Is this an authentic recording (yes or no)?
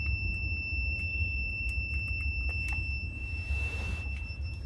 no